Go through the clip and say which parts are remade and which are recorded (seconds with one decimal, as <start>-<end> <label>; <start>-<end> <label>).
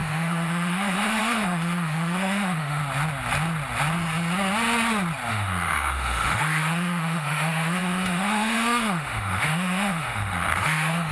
0.0-2.8 remade; 2.8-5.3 recorded; 5.3-11.1 remade